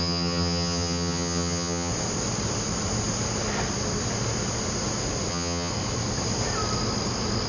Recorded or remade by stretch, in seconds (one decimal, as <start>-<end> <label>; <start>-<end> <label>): 0.0-1.9 remade; 1.9-5.3 recorded; 5.3-5.7 remade; 5.7-7.5 recorded